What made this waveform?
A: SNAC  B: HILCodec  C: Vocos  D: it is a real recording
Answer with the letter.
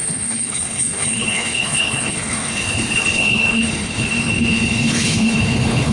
B